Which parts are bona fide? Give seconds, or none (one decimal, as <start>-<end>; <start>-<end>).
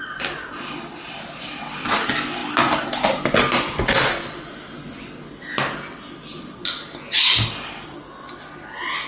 0.0-9.1